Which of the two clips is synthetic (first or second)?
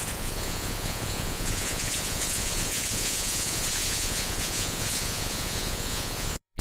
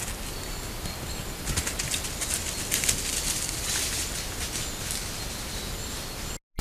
first